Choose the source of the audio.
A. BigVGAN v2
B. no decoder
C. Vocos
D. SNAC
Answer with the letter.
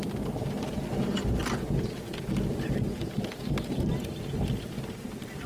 B